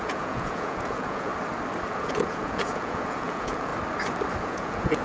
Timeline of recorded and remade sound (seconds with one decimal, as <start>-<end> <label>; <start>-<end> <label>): 0.0-1.3 remade; 1.3-1.9 recorded; 1.9-3.7 remade; 3.7-4.4 recorded; 4.4-5.0 remade